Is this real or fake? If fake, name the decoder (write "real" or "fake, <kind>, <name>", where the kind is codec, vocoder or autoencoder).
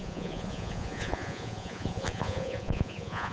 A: fake, vocoder, Vocos